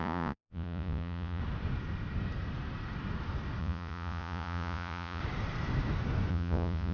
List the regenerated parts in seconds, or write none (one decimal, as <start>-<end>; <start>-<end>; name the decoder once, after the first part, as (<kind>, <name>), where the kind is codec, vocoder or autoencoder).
0.0-1.4 (vocoder, Vocos); 3.6-5.2; 6.3-6.9